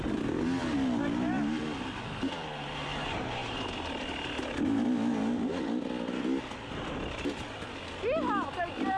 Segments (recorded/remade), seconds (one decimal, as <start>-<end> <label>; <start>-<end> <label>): 0.0-9.0 recorded